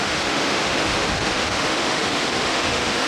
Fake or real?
fake